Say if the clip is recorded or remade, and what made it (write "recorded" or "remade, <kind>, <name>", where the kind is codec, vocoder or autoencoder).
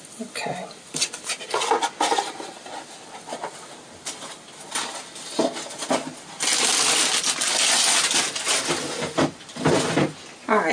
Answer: recorded